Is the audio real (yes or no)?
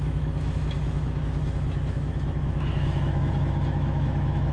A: no